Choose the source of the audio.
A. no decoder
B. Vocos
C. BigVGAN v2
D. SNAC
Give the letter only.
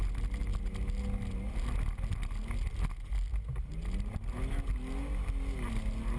A